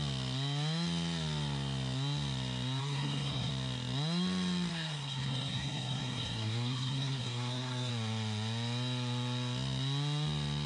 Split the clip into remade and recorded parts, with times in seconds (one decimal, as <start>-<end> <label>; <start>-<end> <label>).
0.0-2.8 recorded; 2.8-3.5 remade; 3.5-4.7 recorded; 4.7-7.9 remade; 7.9-10.7 recorded